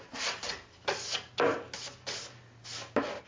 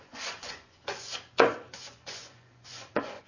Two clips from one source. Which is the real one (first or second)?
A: first